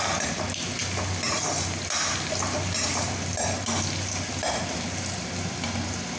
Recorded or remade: recorded